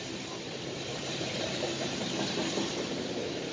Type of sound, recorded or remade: remade